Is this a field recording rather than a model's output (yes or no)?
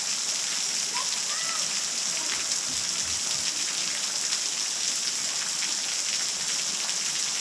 yes